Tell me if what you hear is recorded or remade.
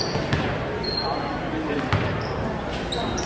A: recorded